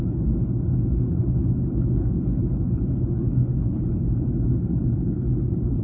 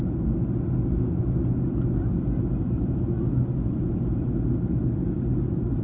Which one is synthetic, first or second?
first